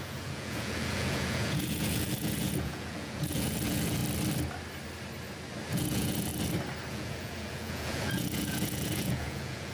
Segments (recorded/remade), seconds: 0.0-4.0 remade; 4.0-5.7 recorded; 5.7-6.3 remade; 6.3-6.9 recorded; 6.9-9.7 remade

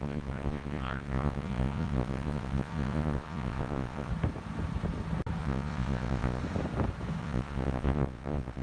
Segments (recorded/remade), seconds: 0.0-4.1 remade; 4.1-5.4 recorded; 5.4-6.4 remade; 6.4-7.2 recorded; 7.2-8.6 remade

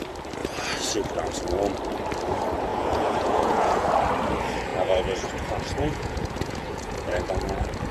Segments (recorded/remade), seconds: 0.0-0.4 recorded; 0.4-0.9 remade; 0.9-2.7 recorded; 2.7-3.8 remade; 3.8-4.7 recorded; 4.7-7.3 remade; 7.3-7.9 recorded

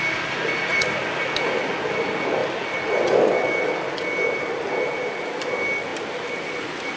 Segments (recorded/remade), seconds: 0.0-0.7 recorded; 0.7-1.6 remade; 1.6-2.4 recorded; 2.4-3.3 remade; 3.3-5.9 recorded; 5.9-7.0 remade